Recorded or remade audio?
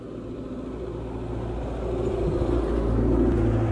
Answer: recorded